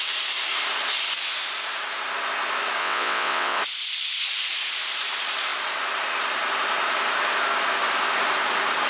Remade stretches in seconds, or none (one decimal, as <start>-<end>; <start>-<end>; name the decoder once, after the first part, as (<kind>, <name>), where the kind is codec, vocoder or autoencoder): 2.8-3.6 (vocoder, WaveNeXt)